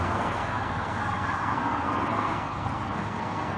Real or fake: fake